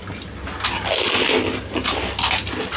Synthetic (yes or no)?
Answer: no